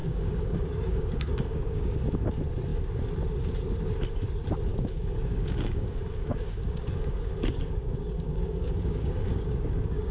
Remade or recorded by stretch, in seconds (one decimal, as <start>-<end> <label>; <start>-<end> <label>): 0.0-2.0 remade; 2.0-4.7 recorded; 4.7-10.1 remade